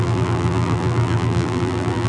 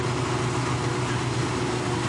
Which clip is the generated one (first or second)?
first